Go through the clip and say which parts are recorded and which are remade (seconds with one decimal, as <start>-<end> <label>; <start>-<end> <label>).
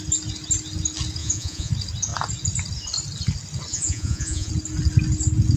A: 0.0-1.2 recorded; 1.2-1.7 remade; 1.7-3.7 recorded; 3.7-4.5 remade; 4.5-5.6 recorded